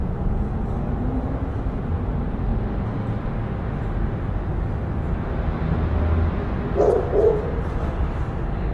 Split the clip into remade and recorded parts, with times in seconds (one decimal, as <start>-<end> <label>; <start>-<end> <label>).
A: 0.0-8.7 recorded